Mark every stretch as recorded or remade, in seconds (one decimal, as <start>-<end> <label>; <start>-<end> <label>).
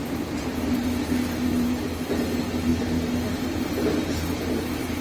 0.0-5.0 recorded